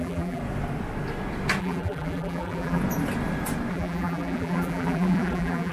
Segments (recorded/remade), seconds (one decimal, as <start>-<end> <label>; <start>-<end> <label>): 0.0-0.4 remade; 0.4-1.6 recorded; 1.6-2.8 remade; 2.8-3.7 recorded; 3.7-5.7 remade